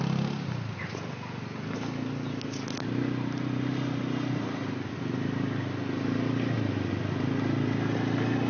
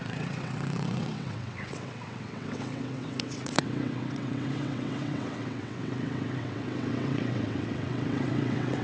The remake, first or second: second